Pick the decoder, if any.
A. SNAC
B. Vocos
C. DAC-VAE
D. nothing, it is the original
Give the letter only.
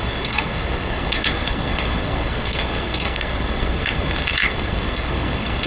A